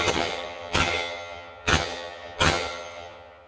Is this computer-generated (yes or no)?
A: yes